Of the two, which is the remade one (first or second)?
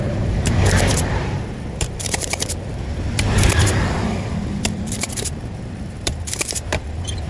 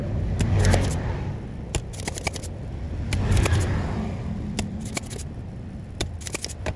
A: first